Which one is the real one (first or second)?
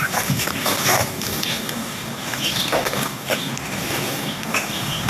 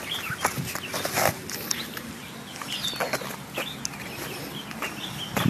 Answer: second